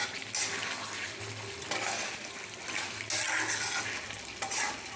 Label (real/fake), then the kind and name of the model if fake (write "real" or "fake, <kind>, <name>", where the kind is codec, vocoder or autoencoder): real